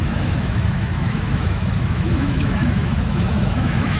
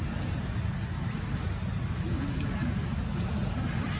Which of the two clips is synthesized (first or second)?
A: first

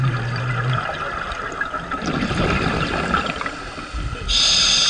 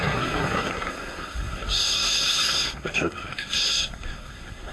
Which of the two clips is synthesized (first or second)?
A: second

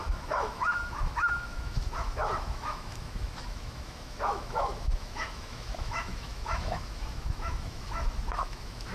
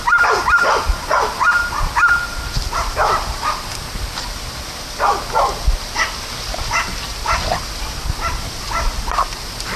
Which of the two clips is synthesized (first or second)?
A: first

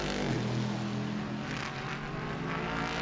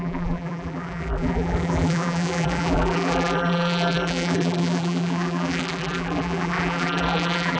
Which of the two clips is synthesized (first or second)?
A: second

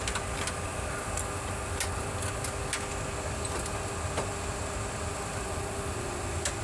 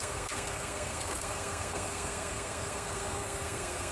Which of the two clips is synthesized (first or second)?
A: second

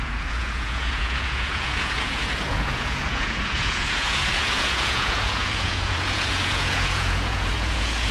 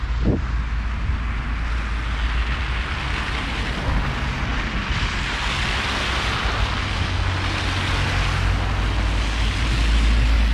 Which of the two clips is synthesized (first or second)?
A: first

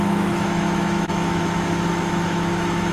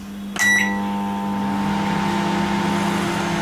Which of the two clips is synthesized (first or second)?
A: first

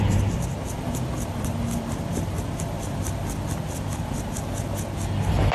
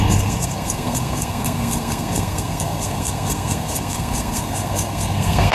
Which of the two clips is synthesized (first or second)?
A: second